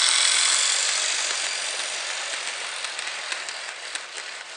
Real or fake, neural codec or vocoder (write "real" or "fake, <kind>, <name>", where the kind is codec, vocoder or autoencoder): real